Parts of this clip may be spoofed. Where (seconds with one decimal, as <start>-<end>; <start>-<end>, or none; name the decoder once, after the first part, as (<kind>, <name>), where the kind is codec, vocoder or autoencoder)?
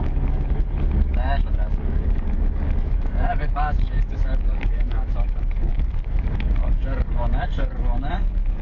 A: 0.0-8.6 (codec, DAC)